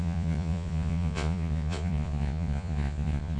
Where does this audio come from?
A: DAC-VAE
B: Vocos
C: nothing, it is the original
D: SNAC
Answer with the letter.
B